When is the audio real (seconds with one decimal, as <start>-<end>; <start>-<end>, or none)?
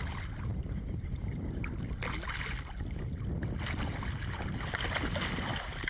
0.0-0.5; 1.6-5.9